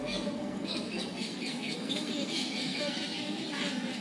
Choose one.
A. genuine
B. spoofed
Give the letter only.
B